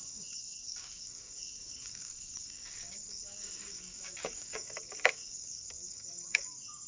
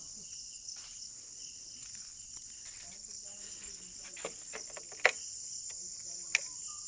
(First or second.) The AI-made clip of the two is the first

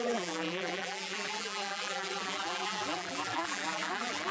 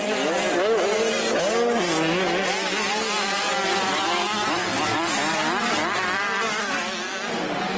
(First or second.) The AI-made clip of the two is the first